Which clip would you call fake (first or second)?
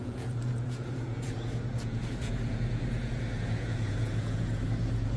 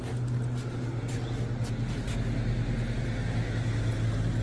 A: first